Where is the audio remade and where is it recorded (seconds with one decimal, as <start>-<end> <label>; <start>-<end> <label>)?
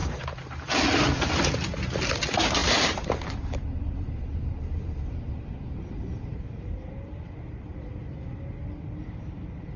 0.0-0.8 remade; 0.8-2.6 recorded; 2.6-6.9 remade; 6.9-9.8 recorded